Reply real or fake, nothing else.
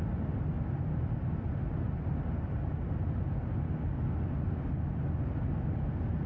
real